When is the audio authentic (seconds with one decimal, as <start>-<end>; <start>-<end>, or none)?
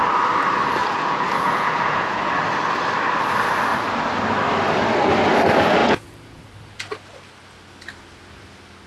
0.0-0.8; 2.2-5.8; 6.4-8.9